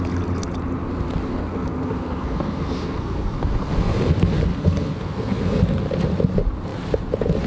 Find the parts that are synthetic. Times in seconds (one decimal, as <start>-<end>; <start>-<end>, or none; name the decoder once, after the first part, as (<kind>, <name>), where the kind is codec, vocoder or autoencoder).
1.3-4.1 (codec, SNAC); 4.5-5.6